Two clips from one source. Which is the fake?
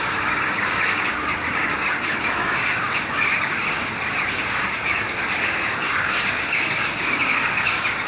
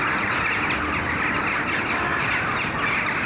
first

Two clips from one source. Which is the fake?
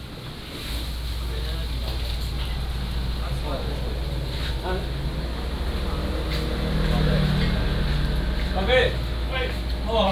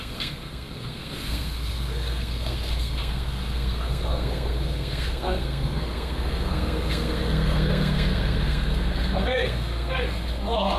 second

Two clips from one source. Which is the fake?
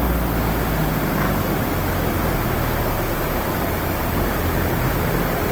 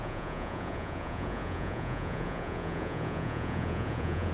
second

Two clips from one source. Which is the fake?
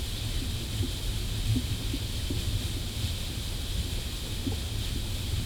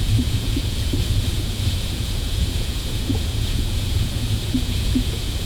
second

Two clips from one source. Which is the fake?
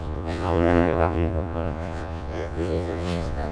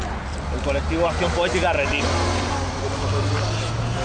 first